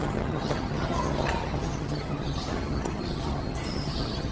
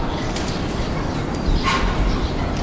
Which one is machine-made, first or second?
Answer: first